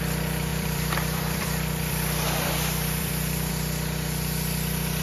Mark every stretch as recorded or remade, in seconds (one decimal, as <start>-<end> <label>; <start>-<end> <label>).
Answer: 0.0-0.5 recorded; 0.5-3.5 remade; 3.5-5.0 recorded